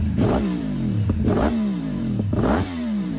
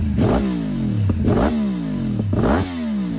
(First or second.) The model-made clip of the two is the first